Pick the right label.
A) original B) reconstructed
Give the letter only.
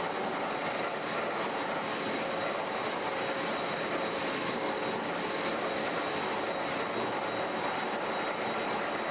A